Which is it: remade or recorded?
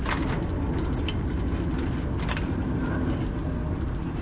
recorded